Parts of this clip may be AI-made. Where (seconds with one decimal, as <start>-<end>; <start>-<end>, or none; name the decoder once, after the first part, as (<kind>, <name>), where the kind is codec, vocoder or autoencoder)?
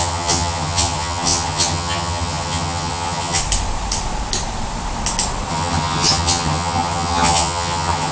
0.0-3.4 (vocoder, HiFi-GAN); 5.5-8.1